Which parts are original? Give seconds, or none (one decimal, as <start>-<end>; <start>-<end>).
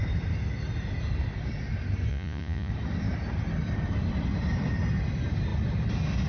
0.0-2.1; 2.7-6.3